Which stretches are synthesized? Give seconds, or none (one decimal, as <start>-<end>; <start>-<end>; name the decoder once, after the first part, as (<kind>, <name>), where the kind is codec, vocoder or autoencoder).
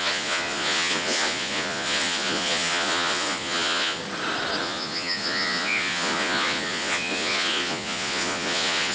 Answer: 0.0-4.0 (vocoder, Vocos); 4.6-8.9